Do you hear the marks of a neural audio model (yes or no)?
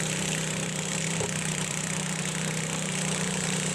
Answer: yes